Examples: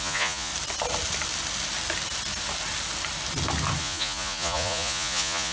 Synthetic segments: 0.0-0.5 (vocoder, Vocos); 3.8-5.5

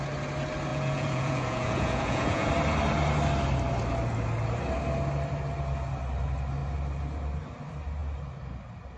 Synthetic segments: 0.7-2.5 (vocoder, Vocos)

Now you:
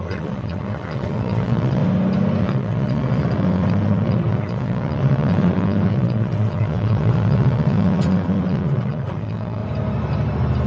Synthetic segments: 0.0-1.8 (vocoder, WaveNeXt); 2.4-9.6

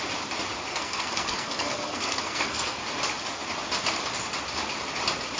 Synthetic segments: 0.7-2.8 (codec, SNAC)

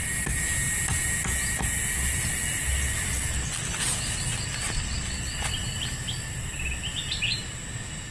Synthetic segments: none